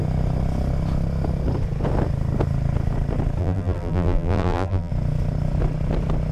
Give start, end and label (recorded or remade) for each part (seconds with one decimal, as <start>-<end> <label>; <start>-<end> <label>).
0.0-3.4 recorded; 3.4-4.9 remade; 4.9-6.3 recorded